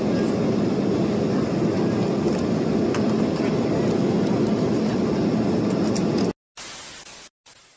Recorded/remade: recorded